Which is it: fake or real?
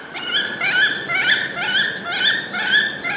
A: real